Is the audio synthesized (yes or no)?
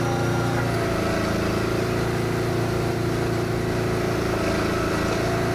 no